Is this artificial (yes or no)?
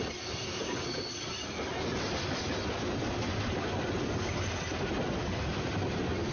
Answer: no